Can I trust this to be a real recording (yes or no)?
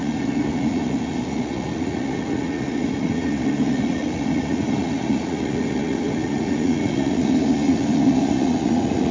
no